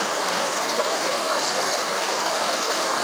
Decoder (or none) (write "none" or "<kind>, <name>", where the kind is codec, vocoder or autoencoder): codec, DAC